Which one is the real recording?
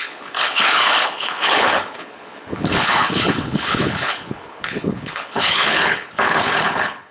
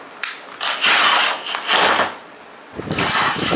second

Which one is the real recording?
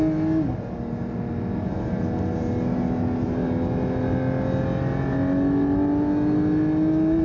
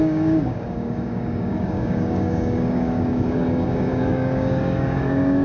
first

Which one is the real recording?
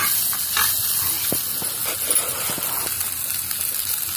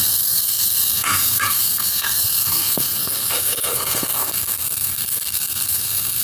first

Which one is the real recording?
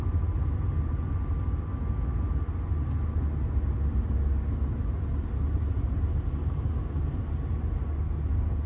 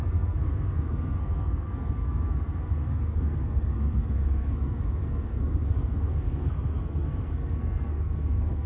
first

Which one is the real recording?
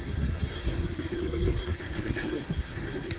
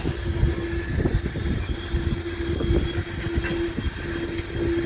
second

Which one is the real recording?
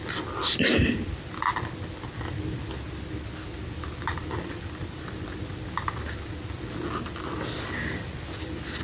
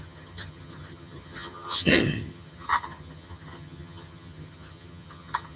first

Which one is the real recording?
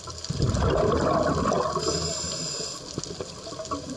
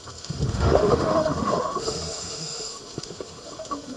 first